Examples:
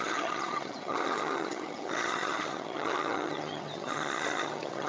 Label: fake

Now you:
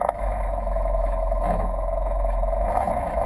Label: fake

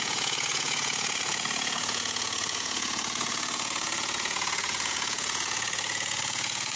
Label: fake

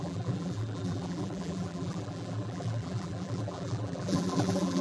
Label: fake